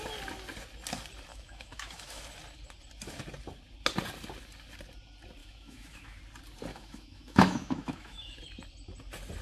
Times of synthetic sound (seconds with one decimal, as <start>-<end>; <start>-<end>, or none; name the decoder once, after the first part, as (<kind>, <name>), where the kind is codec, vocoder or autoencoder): 1.3-2.2 (autoencoder, DAC-VAE); 5.4-6.2; 6.7-8.4